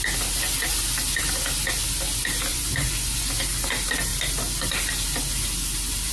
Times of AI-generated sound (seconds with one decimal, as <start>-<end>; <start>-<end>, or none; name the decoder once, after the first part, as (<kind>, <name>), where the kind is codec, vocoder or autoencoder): 2.5-3.3 (vocoder, Vocos)